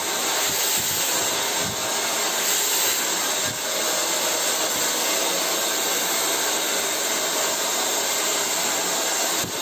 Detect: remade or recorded recorded